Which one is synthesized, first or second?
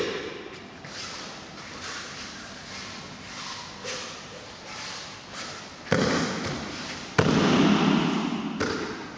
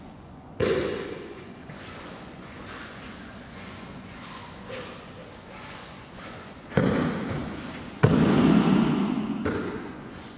second